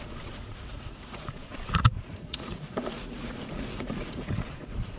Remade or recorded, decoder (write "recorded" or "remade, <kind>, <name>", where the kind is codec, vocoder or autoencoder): remade, vocoder, Vocos